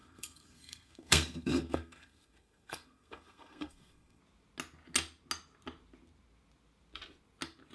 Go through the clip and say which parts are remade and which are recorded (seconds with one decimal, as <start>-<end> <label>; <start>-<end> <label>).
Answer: 0.0-4.2 remade; 4.2-7.7 recorded